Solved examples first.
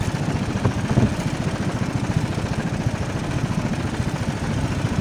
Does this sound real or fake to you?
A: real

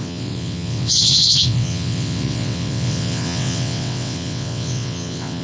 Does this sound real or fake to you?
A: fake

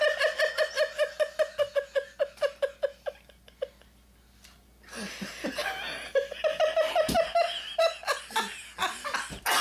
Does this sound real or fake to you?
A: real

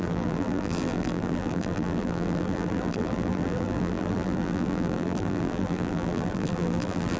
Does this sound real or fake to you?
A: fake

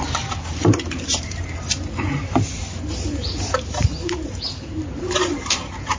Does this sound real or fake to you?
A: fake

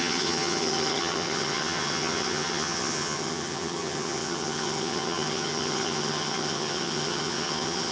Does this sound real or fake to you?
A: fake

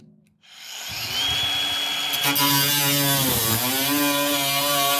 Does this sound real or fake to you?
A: real